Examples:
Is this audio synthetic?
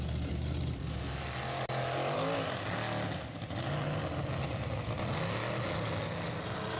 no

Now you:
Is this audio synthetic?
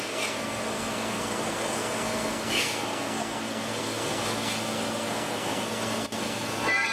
yes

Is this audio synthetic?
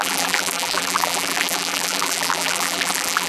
yes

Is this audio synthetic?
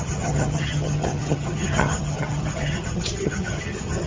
yes